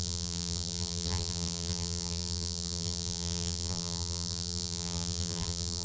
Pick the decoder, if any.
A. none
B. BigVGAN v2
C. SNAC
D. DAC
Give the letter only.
B